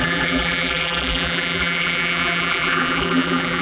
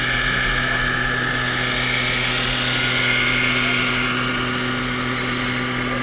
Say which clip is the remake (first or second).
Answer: first